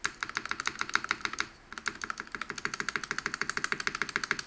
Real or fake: real